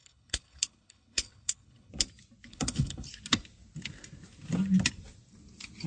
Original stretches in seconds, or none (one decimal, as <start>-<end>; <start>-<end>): 1.9-2.5; 3.1-5.9